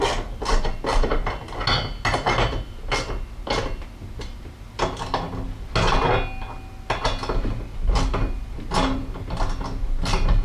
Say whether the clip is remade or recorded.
recorded